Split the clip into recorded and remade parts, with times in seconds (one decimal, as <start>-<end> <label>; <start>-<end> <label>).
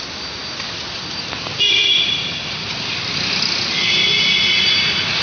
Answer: 0.0-5.2 recorded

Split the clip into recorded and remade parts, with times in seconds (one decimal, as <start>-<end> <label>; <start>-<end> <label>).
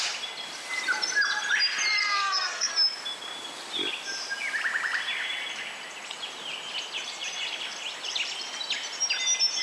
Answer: 0.0-2.0 recorded; 2.0-2.7 remade; 2.7-9.6 recorded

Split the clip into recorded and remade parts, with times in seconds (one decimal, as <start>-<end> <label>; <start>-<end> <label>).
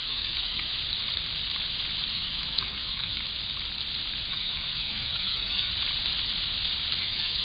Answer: 0.0-0.7 remade; 0.7-2.1 recorded; 2.1-3.2 remade; 3.2-4.3 recorded; 4.3-5.7 remade; 5.7-7.0 recorded; 7.0-7.4 remade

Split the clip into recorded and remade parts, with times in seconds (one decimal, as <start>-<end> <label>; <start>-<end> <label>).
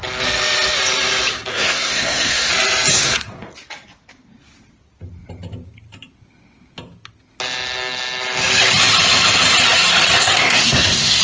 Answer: 0.0-1.5 recorded; 1.5-2.5 remade; 2.5-2.9 recorded; 2.9-3.5 remade; 3.5-10.2 recorded; 10.2-11.2 remade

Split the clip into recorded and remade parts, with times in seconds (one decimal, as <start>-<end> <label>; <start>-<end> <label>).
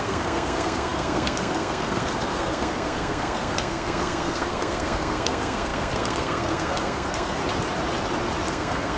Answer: 0.0-7.4 remade; 7.4-8.5 recorded; 8.5-9.0 remade